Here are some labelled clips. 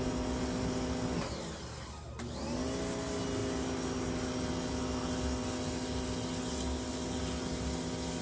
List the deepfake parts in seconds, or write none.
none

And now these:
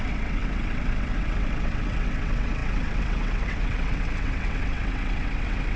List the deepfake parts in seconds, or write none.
0.0-5.8 (vocoder, WaveNeXt)

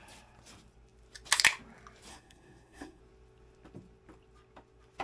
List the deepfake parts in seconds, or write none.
2.1-3.0 (codec, SNAC)

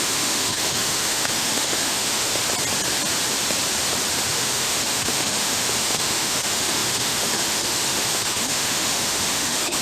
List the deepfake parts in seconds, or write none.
0.0-2.4 (autoencoder, DAC-VAE); 4.3-9.8

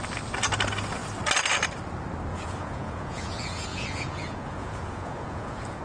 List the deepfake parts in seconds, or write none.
2.3-5.8 (vocoder, Vocos)

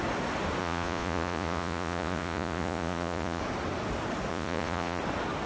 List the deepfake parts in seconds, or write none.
0.6-3.4 (vocoder, Vocos); 4.3-5.0

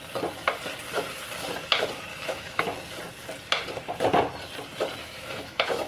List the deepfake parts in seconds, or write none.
2.1-2.6 (autoencoder, DAC-VAE); 5.0-5.9